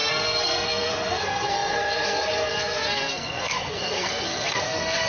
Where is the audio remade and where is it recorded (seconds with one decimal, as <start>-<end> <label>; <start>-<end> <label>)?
0.0-5.1 remade